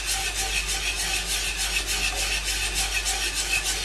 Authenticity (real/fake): real